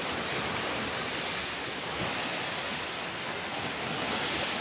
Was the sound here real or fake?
real